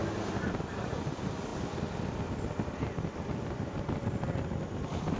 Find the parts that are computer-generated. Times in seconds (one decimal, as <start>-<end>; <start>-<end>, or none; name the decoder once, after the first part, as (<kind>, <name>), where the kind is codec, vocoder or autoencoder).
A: none